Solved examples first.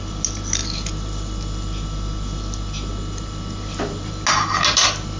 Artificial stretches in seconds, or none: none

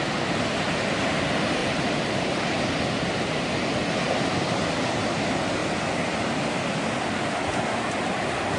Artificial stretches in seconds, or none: 1.6-2.7 (vocoder, BigVGAN v2)

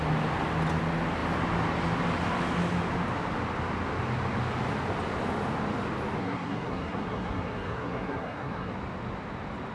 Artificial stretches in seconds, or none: 6.2-8.7 (codec, SNAC)

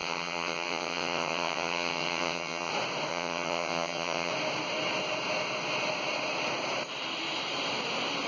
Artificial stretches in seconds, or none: 0.0-2.7 (vocoder, HiFi-GAN); 3.1-4.3